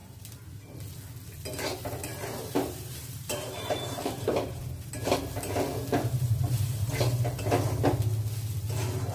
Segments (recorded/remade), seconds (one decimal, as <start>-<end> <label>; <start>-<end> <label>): 0.0-0.6 remade; 0.6-2.1 recorded; 2.1-4.9 remade; 4.9-6.2 recorded; 6.2-6.9 remade; 6.9-9.1 recorded